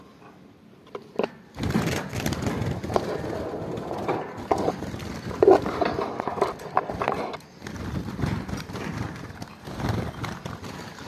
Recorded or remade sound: recorded